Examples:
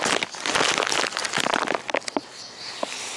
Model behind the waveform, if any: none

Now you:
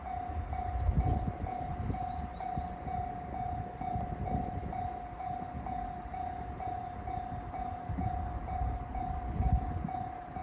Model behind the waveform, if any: none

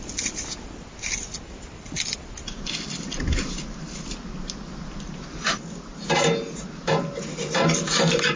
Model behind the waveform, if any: none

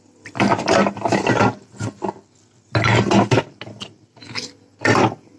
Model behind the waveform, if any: none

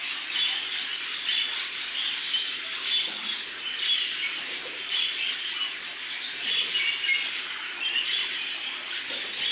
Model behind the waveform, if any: none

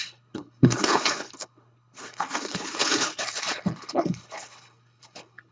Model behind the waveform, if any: codec, HILCodec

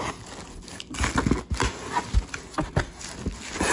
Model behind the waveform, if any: none